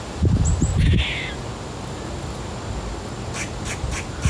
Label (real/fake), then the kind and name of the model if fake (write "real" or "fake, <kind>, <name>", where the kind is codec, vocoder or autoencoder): real